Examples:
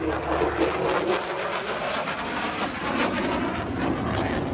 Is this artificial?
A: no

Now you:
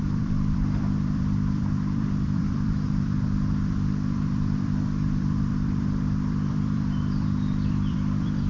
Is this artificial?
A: yes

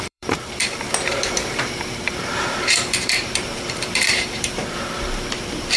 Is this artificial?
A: yes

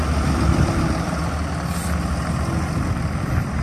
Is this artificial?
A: no